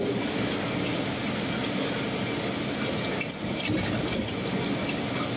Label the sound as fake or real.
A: real